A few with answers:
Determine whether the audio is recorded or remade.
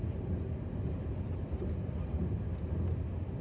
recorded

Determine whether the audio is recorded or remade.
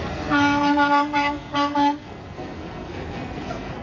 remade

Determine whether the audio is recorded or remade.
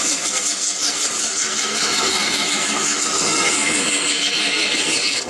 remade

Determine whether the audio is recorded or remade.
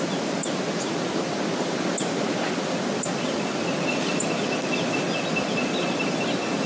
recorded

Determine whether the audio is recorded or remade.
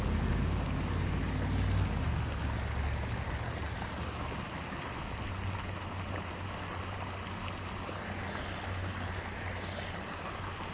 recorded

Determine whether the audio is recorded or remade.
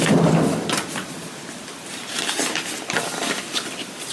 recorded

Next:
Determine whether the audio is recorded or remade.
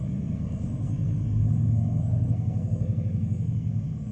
remade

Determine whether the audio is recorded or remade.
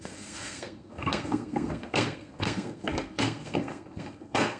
remade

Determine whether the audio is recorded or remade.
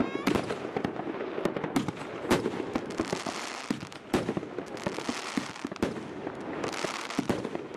recorded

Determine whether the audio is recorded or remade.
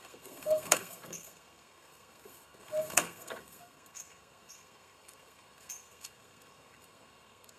remade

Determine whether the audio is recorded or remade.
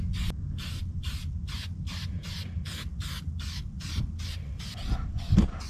recorded